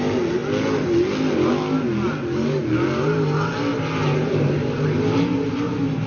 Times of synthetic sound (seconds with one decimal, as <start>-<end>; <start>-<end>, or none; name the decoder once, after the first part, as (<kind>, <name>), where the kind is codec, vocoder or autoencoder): none